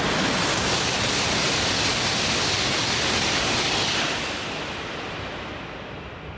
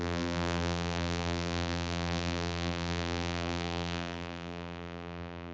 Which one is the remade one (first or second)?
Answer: second